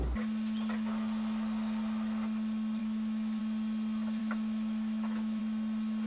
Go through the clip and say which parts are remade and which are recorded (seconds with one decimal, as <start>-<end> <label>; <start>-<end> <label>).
0.0-2.8 recorded; 2.8-3.4 remade; 3.4-4.2 recorded; 4.2-5.4 remade; 5.4-6.1 recorded